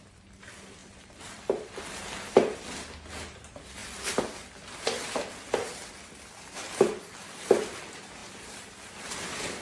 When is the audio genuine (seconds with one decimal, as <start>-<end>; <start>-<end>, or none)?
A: 0.0-0.8; 1.7-9.6